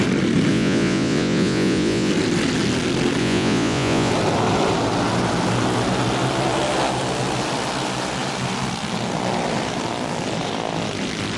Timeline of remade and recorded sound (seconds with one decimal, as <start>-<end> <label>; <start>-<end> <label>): 0.0-0.5 recorded; 0.5-2.1 remade; 2.1-3.2 recorded; 3.2-4.1 remade; 4.1-11.4 recorded